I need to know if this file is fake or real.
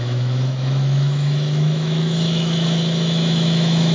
fake